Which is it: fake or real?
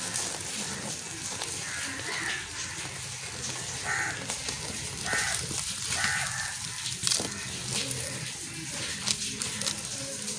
real